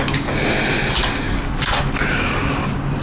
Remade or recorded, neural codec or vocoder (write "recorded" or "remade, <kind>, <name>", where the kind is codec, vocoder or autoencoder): recorded